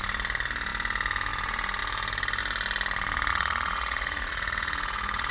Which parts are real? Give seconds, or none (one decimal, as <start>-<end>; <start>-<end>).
0.0-3.3